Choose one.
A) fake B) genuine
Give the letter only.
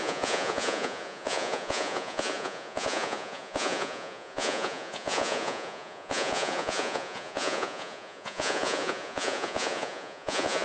A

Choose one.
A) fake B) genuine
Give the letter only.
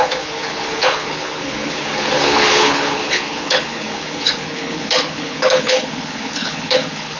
A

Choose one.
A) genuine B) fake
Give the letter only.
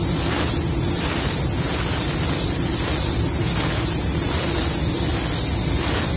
A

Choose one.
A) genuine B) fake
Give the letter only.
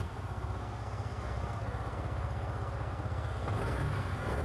B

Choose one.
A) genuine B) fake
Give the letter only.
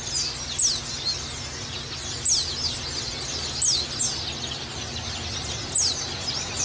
A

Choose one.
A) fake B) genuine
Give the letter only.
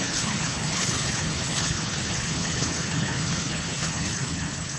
A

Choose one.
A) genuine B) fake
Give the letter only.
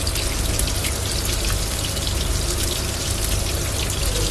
A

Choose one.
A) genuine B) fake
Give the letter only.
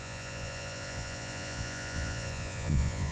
B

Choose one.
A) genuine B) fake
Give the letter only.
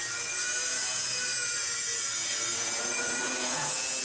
B